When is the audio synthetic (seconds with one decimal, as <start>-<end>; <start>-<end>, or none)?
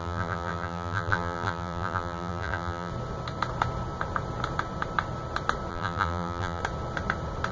0.0-2.9; 5.7-6.6